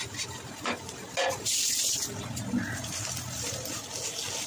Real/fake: real